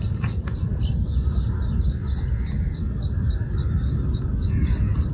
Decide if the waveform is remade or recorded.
recorded